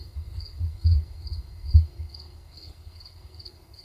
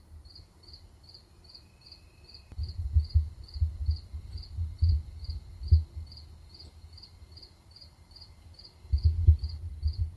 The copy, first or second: first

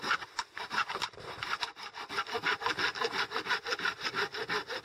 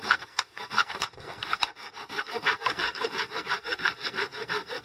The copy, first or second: second